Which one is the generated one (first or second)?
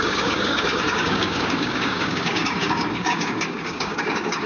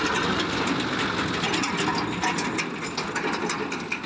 first